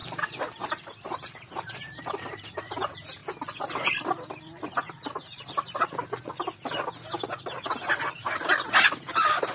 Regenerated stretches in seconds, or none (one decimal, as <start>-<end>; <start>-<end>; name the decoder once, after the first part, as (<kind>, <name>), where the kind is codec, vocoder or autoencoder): 0.0-3.2 (vocoder, BigVGAN v2); 8.1-9.5